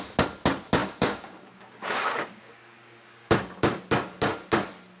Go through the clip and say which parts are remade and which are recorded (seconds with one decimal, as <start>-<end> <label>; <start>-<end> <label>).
0.0-0.8 recorded; 0.8-3.8 remade; 3.8-5.0 recorded